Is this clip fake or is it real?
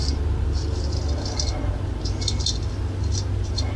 real